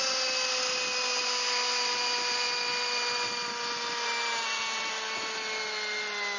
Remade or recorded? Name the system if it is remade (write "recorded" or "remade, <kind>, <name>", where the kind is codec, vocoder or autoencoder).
recorded